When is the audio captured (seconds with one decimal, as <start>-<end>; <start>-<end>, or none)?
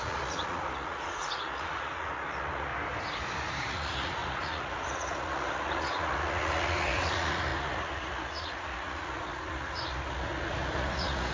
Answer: 2.7-3.6